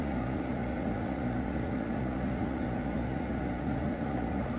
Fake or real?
fake